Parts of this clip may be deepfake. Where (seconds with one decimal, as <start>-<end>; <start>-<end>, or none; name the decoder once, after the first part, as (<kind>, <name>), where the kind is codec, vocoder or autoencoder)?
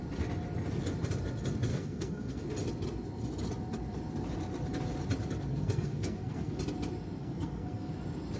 1.7-2.4 (codec, SNAC); 5.5-6.6; 7.2-7.9